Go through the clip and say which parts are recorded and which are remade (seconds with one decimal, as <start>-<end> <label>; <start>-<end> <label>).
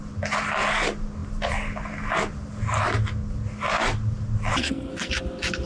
0.0-4.6 recorded; 4.6-5.1 remade; 5.1-5.7 recorded